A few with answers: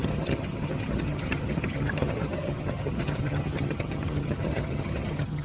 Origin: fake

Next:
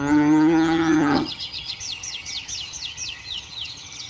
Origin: fake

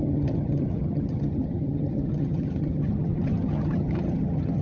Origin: fake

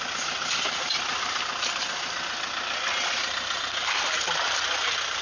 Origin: real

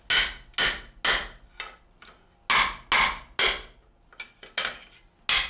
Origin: real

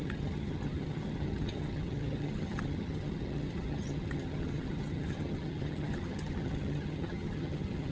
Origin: fake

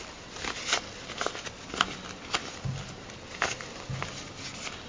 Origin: real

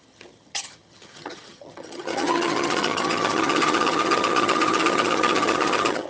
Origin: fake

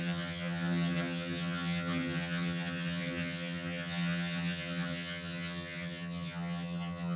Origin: fake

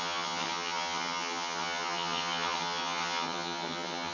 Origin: fake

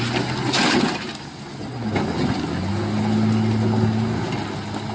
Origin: real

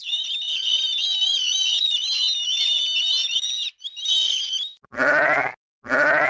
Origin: real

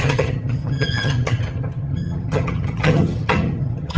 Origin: fake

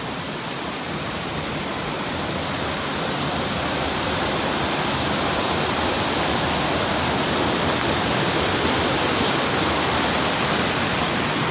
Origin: real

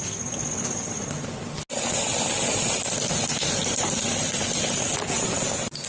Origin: real